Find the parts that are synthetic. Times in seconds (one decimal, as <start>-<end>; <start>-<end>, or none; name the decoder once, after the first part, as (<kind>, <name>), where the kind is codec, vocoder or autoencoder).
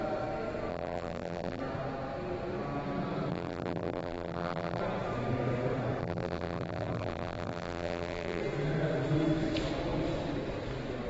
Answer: 0.7-1.6 (vocoder, BigVGAN v2); 3.3-4.8; 6.0-8.4